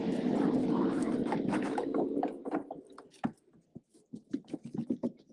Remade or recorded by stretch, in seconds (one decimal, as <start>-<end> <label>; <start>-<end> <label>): 0.0-0.6 recorded; 0.6-2.5 remade; 2.5-3.7 recorded; 3.7-5.3 remade